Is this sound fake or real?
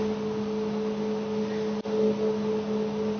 real